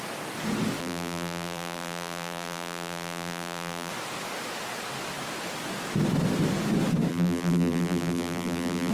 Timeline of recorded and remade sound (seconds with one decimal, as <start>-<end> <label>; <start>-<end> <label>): 0.0-0.8 recorded; 0.8-3.9 remade; 3.9-7.1 recorded; 7.1-8.9 remade